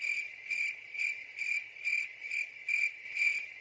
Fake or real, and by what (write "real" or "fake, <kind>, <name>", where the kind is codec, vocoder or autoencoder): real